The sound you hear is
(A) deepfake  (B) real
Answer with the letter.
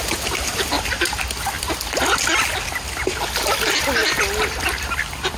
B